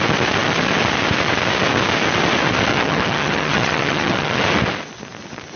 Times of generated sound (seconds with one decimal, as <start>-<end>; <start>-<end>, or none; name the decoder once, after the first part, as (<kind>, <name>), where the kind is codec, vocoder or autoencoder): 2.7-4.4 (vocoder, HiFi-GAN)